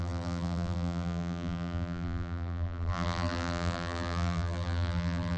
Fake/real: fake